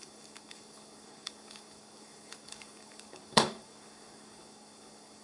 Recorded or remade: remade